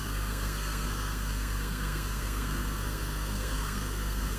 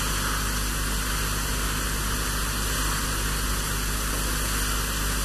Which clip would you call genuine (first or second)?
second